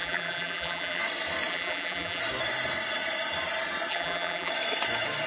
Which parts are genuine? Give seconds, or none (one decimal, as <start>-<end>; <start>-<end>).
1.0-1.5; 2.2-3.9; 4.5-5.3